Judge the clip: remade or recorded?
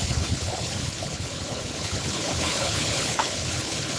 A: remade